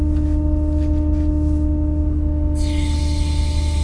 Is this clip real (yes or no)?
yes